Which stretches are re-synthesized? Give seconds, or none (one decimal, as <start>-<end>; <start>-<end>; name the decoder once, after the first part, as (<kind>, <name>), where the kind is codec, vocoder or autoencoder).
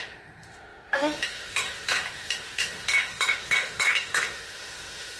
0.0-5.2 (autoencoder, DAC-VAE)